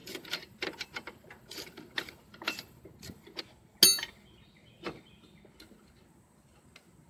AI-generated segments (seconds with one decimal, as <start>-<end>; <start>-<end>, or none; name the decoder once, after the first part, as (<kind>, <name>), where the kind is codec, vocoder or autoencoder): 0.0-3.4 (vocoder, BigVGAN v2)